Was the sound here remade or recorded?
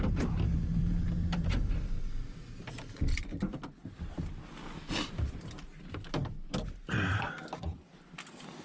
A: recorded